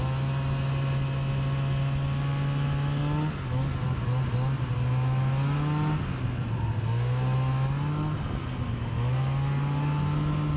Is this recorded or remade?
recorded